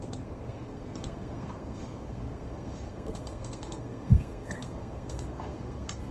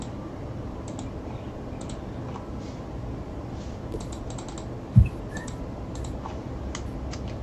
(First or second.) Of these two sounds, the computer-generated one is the first